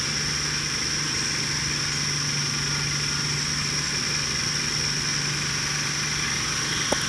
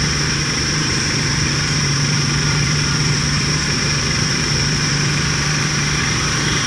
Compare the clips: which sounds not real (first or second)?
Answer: second